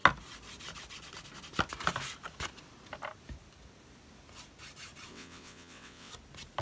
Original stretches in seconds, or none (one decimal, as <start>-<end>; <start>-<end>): 0.0-5.1; 6.1-6.6